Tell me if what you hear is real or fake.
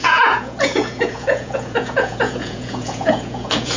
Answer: fake